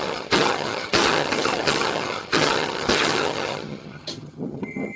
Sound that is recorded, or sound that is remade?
remade